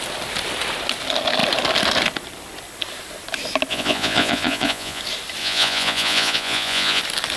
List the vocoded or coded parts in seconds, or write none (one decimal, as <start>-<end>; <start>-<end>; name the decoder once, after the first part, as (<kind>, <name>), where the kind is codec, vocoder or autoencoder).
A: 3.7-5.0 (vocoder, Vocos); 5.4-7.0